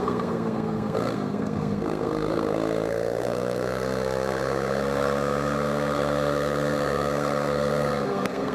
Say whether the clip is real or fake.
fake